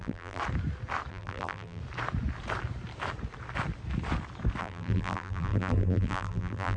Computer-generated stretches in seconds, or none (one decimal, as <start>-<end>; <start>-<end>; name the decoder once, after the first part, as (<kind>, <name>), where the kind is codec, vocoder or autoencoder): 0.0-0.4 (vocoder, BigVGAN v2); 1.1-1.8; 4.6-6.8